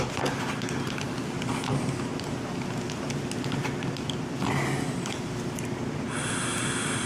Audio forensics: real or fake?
real